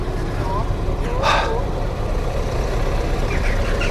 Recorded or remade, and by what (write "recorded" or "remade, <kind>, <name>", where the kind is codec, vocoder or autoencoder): recorded